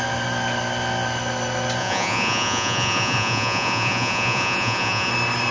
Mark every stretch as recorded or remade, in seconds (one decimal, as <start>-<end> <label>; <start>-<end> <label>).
0.0-1.8 recorded; 1.8-5.1 remade; 5.1-5.5 recorded